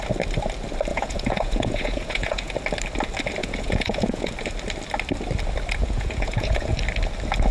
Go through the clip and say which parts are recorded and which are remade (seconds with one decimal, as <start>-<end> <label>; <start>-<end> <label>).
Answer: 0.0-0.9 recorded; 0.9-2.5 remade; 2.5-3.4 recorded; 3.4-4.3 remade; 4.3-5.8 recorded; 5.8-6.8 remade; 6.8-7.5 recorded